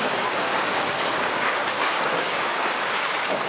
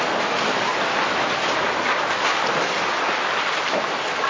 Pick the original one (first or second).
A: second